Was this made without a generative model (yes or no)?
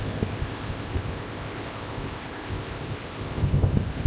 no